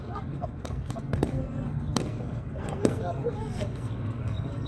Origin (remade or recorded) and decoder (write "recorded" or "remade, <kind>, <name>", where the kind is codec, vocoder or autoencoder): remade, codec, SNAC